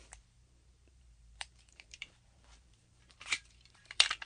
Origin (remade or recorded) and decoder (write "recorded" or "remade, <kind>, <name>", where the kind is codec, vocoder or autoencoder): remade, vocoder, BigVGAN v2